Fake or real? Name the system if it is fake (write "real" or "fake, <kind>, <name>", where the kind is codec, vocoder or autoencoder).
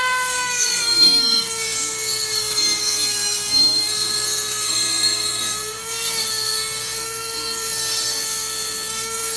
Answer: fake, codec, SNAC